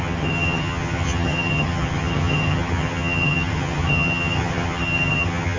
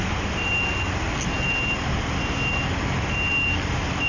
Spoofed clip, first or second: first